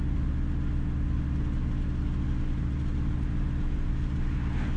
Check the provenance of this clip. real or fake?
real